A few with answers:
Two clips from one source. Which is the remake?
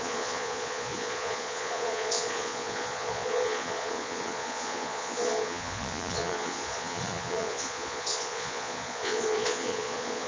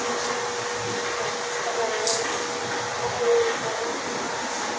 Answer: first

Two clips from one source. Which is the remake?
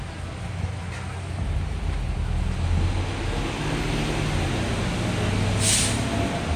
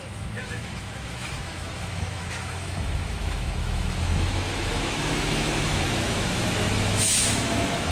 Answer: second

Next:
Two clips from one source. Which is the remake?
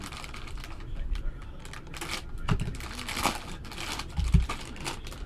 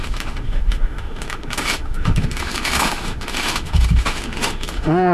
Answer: second